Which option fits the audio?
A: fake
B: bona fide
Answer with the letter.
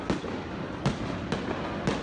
B